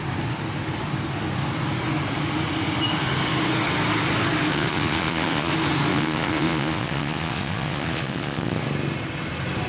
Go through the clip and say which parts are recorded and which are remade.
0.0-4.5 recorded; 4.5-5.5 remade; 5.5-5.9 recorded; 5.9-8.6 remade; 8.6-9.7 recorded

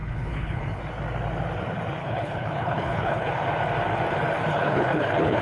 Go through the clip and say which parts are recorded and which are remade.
0.0-0.8 remade; 0.8-2.0 recorded; 2.0-3.3 remade; 3.3-4.5 recorded; 4.5-5.4 remade

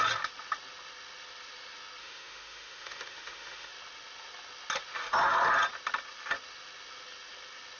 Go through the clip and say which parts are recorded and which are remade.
0.0-2.0 recorded; 2.0-3.7 remade; 3.7-7.8 recorded

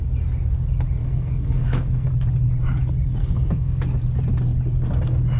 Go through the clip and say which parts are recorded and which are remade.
0.0-1.0 recorded; 1.0-2.1 remade; 2.1-3.2 recorded; 3.2-3.8 remade; 3.8-5.4 recorded

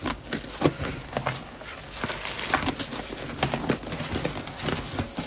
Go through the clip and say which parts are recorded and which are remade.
0.0-5.3 recorded

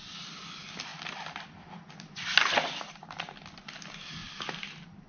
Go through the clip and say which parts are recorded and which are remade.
0.0-5.1 recorded

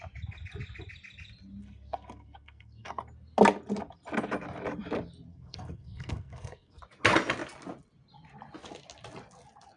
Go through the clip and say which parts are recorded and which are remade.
0.0-1.6 recorded; 1.6-3.0 remade; 3.0-5.3 recorded; 5.3-6.8 remade; 6.8-9.8 recorded

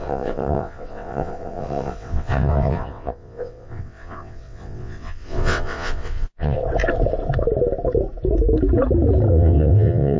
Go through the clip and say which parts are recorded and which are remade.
0.0-6.6 remade; 6.6-9.3 recorded; 9.3-10.2 remade